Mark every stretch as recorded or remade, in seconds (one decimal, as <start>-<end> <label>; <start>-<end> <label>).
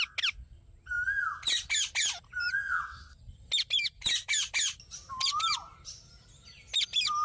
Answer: 0.0-2.6 recorded; 2.6-3.2 remade; 3.2-7.2 recorded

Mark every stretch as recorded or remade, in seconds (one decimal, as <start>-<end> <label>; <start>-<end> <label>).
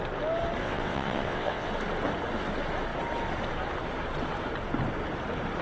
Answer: 0.0-0.6 recorded; 0.6-1.7 remade; 1.7-5.6 recorded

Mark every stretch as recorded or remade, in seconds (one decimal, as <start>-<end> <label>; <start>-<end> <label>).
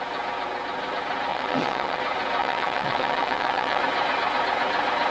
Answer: 0.0-1.3 recorded; 1.3-2.0 remade; 2.0-2.4 recorded; 2.4-3.8 remade; 3.8-5.1 recorded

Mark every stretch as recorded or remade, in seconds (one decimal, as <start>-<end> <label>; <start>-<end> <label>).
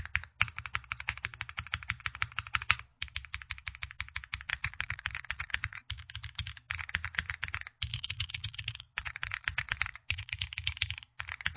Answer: 0.0-4.5 recorded; 4.5-5.8 remade; 5.8-7.9 recorded; 7.9-10.3 remade; 10.3-11.6 recorded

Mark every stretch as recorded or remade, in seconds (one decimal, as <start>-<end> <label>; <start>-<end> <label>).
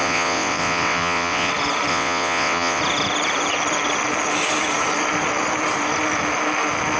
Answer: 0.0-1.5 remade; 1.5-1.9 recorded; 1.9-2.8 remade; 2.8-7.0 recorded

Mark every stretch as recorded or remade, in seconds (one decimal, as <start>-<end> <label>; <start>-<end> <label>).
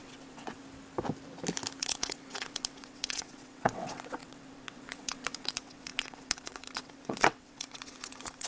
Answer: 0.0-0.6 remade; 0.6-1.8 recorded; 1.8-8.5 remade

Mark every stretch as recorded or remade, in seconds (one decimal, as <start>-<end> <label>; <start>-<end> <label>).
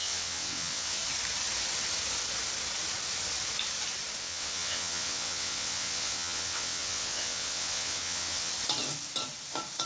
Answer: 0.0-1.0 remade; 1.0-4.2 recorded; 4.2-8.5 remade; 8.5-9.9 recorded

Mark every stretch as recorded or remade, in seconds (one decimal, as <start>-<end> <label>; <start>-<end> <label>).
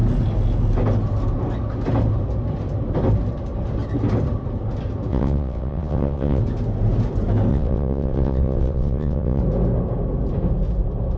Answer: 0.0-5.1 recorded; 5.1-6.4 remade; 6.4-7.5 recorded; 7.5-9.4 remade; 9.4-11.2 recorded